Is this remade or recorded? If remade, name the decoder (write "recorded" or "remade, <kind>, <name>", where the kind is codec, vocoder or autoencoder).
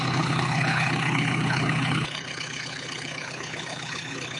remade, codec, HILCodec